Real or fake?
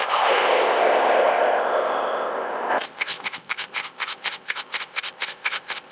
fake